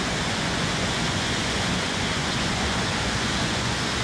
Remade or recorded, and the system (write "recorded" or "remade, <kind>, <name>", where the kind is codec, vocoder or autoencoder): remade, vocoder, Vocos